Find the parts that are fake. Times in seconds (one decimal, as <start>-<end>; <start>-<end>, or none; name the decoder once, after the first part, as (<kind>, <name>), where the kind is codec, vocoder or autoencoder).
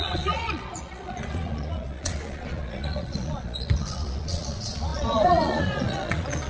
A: 0.0-6.5 (vocoder, Vocos)